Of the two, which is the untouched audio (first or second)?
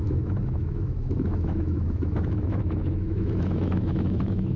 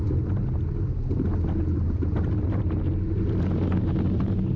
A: second